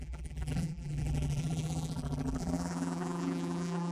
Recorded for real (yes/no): no